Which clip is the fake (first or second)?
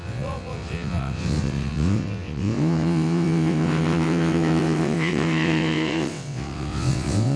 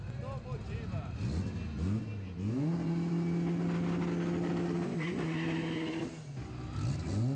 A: first